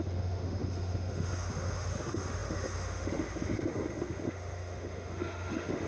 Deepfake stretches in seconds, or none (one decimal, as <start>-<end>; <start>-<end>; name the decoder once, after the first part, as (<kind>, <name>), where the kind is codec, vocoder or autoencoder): 0.0-5.9 (autoencoder, DAC-VAE)